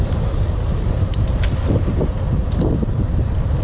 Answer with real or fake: fake